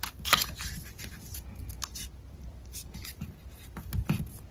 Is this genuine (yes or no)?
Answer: yes